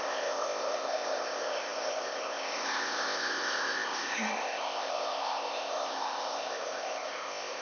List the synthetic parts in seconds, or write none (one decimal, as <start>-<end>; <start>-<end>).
0.0-7.6